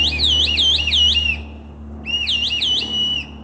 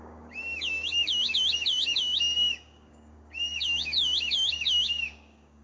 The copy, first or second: second